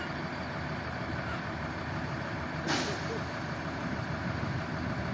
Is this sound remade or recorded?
recorded